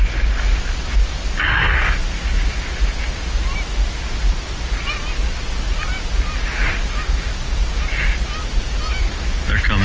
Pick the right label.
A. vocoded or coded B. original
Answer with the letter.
B